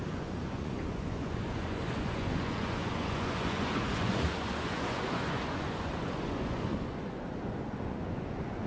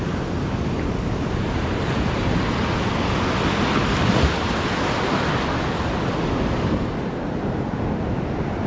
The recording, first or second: second